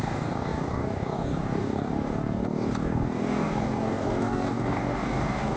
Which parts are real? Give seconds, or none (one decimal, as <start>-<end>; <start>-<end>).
none